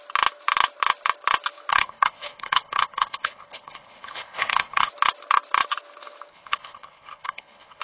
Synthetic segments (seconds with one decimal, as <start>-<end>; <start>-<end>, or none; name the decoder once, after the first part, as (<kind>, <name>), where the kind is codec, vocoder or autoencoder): 1.7-4.9 (codec, HILCodec); 6.3-7.8

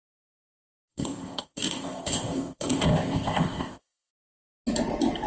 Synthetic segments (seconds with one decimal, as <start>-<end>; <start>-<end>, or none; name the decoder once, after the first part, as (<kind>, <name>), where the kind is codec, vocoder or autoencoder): 0.9-4.1 (codec, ZipCodec)